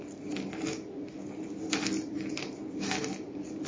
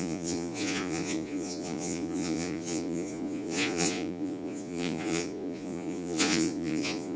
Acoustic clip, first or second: first